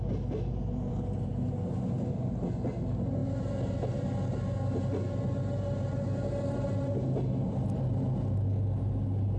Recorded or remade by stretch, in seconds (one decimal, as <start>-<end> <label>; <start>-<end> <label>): 0.0-9.4 recorded